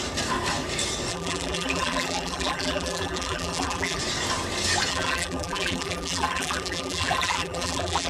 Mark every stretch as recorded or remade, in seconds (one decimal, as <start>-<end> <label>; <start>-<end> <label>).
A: 0.0-1.1 recorded; 1.1-4.0 remade; 4.0-4.9 recorded; 4.9-8.1 remade